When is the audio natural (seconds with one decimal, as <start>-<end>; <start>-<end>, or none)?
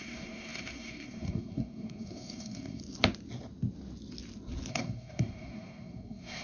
2.8-4.7